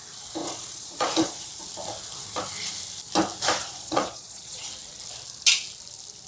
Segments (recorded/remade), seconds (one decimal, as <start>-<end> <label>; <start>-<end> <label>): 0.0-0.4 recorded; 0.4-1.5 remade; 1.5-3.6 recorded; 3.6-4.7 remade; 4.7-6.3 recorded